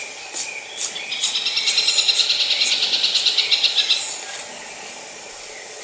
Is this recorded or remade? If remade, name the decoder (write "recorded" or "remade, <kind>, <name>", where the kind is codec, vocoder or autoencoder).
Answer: recorded